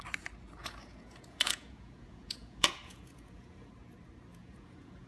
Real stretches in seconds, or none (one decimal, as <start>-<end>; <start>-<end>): 0.0-0.6; 3.7-4.3